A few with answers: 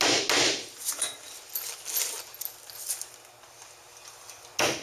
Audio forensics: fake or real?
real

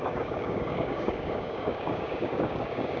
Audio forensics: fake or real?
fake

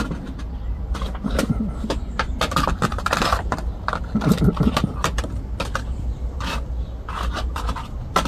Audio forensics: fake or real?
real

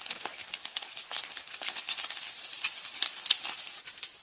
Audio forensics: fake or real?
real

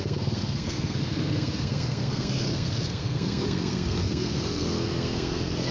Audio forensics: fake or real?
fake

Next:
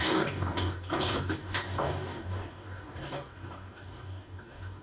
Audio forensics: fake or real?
fake